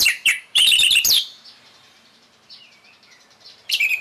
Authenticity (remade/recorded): remade